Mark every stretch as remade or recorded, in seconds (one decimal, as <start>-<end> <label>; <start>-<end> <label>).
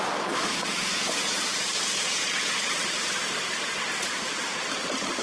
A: 0.0-0.5 recorded; 0.5-2.7 remade; 2.7-5.2 recorded